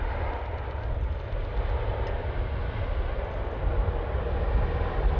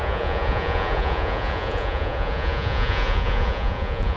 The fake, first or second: second